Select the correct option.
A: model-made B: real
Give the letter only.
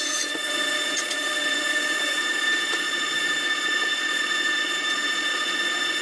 A